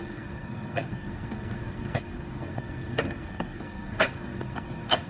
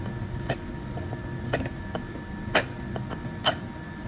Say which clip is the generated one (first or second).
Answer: first